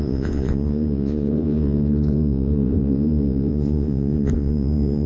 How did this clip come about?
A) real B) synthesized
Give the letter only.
B